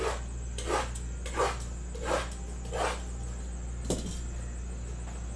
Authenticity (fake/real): real